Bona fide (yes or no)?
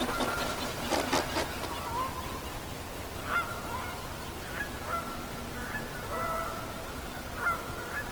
yes